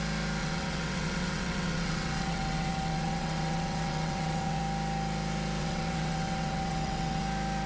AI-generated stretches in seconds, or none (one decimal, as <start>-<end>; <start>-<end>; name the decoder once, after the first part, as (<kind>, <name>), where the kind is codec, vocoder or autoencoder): 0.4-4.6 (vocoder, WaveNeXt); 5.6-7.2